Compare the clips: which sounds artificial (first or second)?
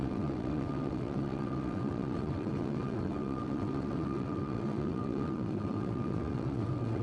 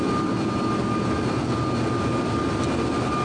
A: first